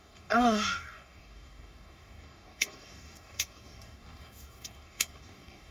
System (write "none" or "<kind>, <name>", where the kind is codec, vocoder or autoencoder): codec, DAC